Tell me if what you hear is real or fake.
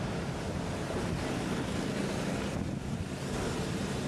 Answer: real